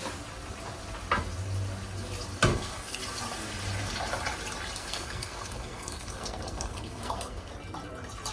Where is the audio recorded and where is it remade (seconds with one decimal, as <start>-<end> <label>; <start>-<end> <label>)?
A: 0.0-2.5 recorded; 2.5-3.0 remade; 3.0-4.8 recorded; 4.8-7.5 remade; 7.5-8.3 recorded